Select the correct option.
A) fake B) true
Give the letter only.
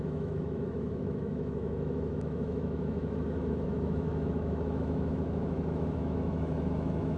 A